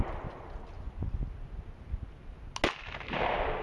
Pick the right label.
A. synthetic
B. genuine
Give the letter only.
B